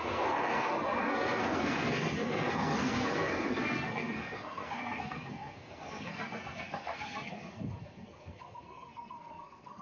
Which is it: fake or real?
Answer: fake